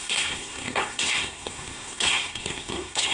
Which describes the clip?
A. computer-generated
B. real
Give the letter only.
A